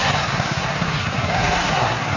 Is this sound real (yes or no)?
no